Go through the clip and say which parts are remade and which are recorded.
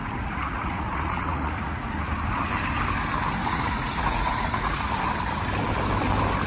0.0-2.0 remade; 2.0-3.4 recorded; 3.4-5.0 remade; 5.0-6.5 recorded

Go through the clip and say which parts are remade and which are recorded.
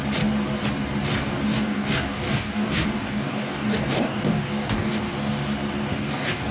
0.0-1.2 recorded; 1.2-5.1 remade; 5.1-5.9 recorded; 5.9-6.5 remade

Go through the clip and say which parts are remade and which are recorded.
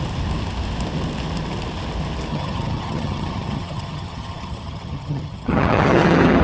0.0-2.3 recorded; 2.3-6.4 remade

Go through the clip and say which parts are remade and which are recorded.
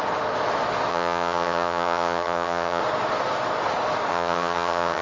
0.0-0.9 recorded; 0.9-2.8 remade; 2.8-4.1 recorded; 4.1-5.0 remade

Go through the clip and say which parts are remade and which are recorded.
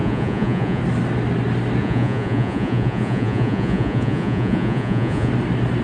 0.0-0.8 remade; 0.8-1.8 recorded; 1.8-5.3 remade; 5.3-5.8 recorded